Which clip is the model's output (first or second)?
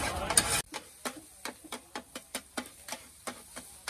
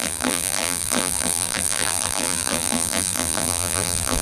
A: second